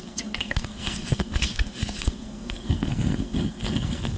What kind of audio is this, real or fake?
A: fake